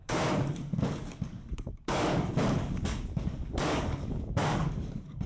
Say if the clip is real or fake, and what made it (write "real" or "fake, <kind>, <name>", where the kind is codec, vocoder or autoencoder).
fake, codec, DAC